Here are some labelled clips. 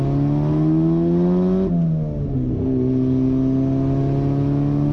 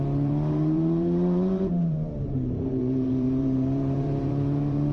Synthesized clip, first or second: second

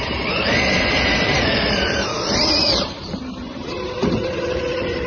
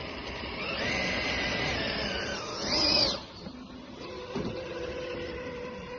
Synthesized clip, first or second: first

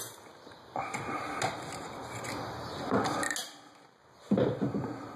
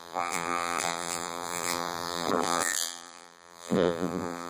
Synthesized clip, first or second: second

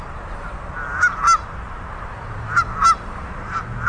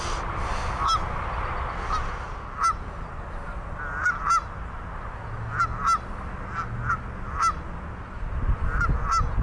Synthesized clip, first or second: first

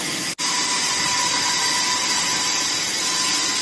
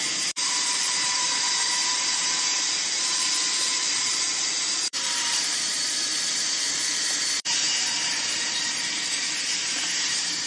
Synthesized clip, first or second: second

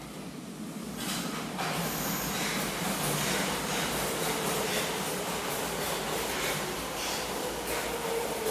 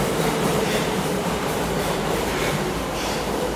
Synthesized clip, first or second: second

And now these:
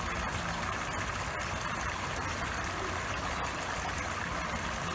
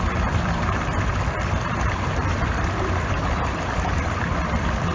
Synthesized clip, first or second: second